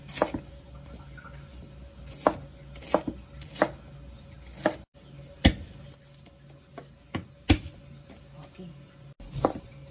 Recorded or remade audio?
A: recorded